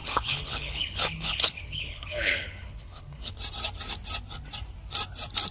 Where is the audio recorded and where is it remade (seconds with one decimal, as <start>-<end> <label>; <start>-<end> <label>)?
0.0-3.3 remade; 3.3-5.5 recorded